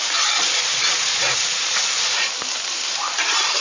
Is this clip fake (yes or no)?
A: yes